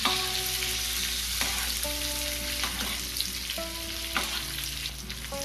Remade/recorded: recorded